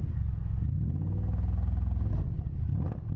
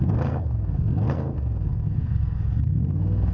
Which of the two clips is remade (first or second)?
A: second